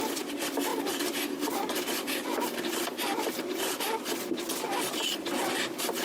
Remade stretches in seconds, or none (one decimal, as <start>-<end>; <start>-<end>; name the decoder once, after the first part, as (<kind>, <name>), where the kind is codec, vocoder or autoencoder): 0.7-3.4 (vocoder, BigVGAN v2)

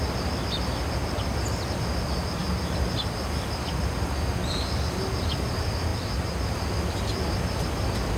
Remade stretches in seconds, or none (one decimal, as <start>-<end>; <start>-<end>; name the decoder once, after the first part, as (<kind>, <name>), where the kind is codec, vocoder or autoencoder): 2.4-3.0 (vocoder, BigVGAN v2); 5.9-6.5

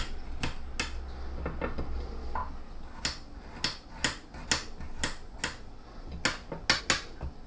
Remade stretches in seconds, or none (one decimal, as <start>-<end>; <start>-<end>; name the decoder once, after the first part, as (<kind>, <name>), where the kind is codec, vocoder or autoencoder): none

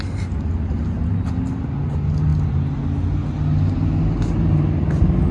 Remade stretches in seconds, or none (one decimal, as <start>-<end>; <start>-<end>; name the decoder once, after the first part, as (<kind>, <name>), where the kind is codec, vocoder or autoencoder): none

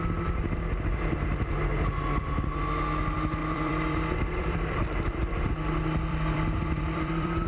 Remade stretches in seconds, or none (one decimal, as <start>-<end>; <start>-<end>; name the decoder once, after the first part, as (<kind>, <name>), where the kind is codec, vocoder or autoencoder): 3.4-5.5 (vocoder, BigVGAN v2); 6.1-7.5

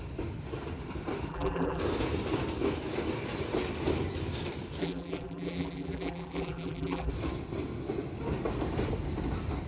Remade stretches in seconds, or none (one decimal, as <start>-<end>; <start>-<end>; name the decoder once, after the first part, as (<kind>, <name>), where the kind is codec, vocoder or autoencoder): 1.3-1.8 (vocoder, BigVGAN v2); 4.8-7.1